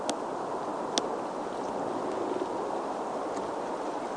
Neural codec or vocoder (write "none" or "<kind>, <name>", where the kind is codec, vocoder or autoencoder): none